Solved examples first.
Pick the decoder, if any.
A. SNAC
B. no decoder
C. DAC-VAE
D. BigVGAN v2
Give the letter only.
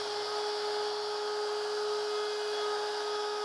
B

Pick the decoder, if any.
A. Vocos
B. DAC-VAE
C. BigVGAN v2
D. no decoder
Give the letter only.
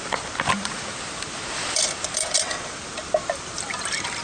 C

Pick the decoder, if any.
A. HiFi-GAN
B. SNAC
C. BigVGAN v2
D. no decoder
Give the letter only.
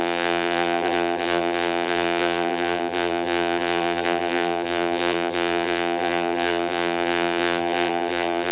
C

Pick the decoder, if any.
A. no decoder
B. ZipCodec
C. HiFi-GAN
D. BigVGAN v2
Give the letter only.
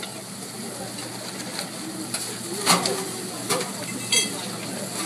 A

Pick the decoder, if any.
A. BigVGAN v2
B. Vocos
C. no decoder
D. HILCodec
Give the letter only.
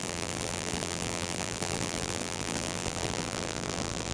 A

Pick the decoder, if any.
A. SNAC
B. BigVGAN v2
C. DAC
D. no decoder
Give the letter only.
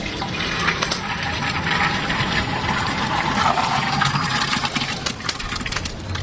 B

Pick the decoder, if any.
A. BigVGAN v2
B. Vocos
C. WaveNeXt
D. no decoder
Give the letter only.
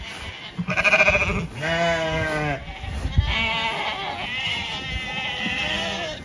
D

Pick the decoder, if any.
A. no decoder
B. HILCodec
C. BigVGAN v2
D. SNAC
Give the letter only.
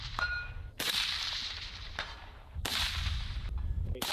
C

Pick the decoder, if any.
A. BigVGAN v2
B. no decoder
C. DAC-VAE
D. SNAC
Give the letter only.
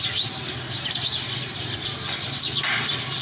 B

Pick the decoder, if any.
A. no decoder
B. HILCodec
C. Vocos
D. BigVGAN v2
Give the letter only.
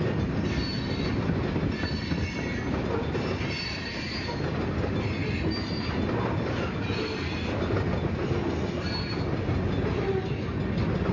A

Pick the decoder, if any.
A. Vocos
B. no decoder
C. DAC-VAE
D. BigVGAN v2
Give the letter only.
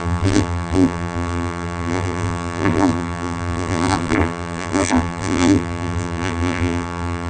D